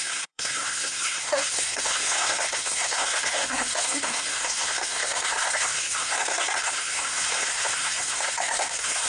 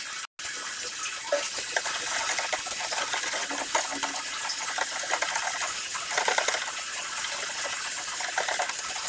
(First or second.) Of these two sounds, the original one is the second